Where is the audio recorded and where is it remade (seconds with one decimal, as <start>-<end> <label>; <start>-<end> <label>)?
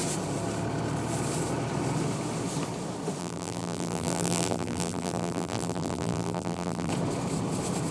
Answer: 0.0-3.2 recorded; 3.2-6.9 remade; 6.9-7.9 recorded